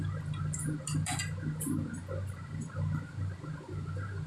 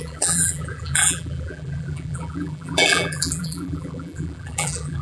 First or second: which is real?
first